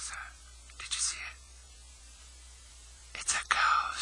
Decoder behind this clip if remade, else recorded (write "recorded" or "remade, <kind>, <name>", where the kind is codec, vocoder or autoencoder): remade, vocoder, BigVGAN v2